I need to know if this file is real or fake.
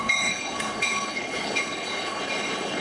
fake